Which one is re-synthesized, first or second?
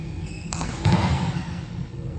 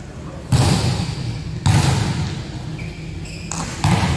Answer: first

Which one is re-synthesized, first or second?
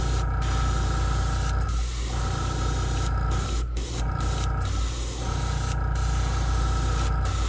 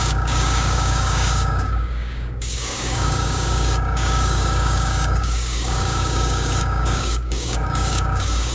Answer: second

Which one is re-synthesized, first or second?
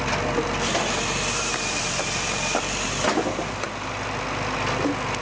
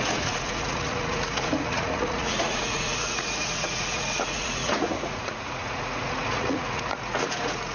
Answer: second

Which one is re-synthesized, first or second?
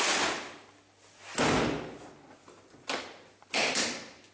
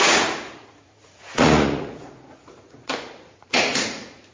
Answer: second